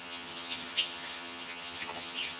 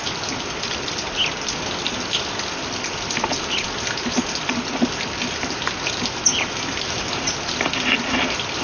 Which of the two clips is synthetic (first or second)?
first